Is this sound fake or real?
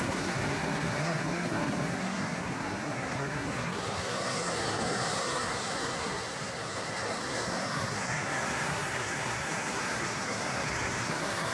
fake